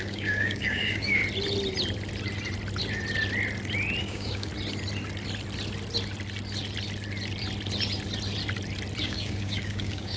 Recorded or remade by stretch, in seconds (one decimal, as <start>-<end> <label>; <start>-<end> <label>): 0.0-1.2 remade; 1.2-4.0 recorded; 4.0-4.5 remade; 4.5-9.0 recorded; 9.0-10.2 remade